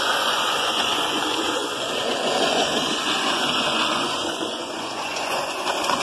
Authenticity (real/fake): fake